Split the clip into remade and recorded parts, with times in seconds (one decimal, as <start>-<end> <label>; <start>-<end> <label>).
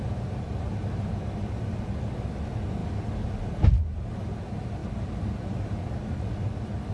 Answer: 0.0-6.9 recorded